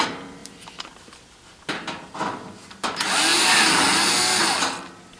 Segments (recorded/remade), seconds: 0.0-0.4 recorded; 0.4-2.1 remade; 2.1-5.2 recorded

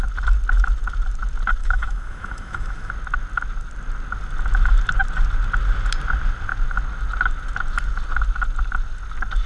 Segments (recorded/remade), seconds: 0.0-1.6 recorded; 1.6-2.9 remade; 2.9-9.5 recorded

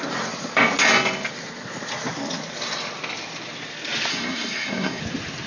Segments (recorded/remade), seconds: 0.0-4.1 recorded; 4.1-5.0 remade; 5.0-5.5 recorded

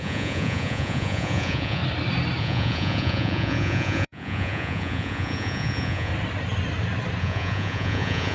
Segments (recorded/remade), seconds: 0.0-1.8 remade; 1.8-2.4 recorded; 2.4-6.1 remade; 6.1-7.2 recorded; 7.2-8.3 remade

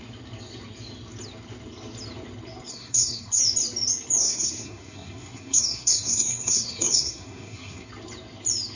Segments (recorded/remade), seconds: 0.0-2.7 recorded; 2.7-3.4 remade; 3.4-4.2 recorded; 4.2-7.9 remade; 7.9-8.8 recorded